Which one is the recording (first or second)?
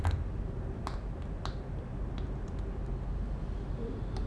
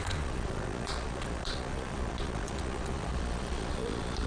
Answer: first